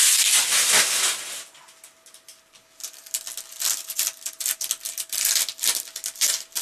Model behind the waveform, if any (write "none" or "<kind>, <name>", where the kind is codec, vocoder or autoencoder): none